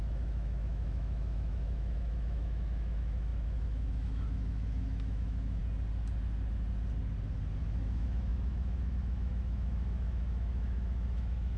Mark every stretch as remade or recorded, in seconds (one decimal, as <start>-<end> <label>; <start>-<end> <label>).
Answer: 0.0-5.6 remade; 5.6-7.6 recorded; 7.6-11.6 remade